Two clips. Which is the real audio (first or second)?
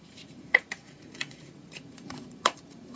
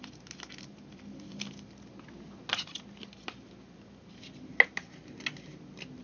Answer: second